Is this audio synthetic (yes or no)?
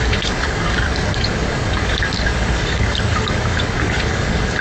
yes